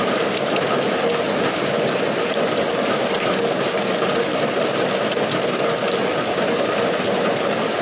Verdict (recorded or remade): recorded